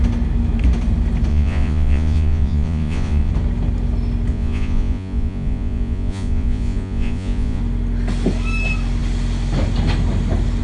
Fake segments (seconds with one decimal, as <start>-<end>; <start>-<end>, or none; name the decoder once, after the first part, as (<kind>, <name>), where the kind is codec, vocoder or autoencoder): 1.3-3.3 (vocoder, Vocos); 4.3-7.6